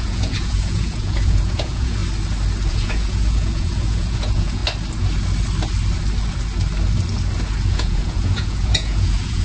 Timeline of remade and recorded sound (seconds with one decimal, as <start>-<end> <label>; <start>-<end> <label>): 0.0-2.0 remade; 2.0-2.7 recorded; 2.7-4.6 remade; 4.6-7.7 recorded; 7.7-9.4 remade